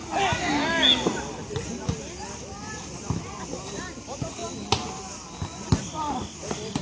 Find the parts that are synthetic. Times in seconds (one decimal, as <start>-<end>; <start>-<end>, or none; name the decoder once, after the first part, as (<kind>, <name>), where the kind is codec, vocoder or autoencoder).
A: none